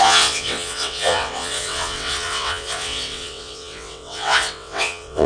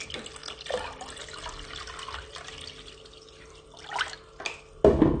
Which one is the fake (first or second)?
first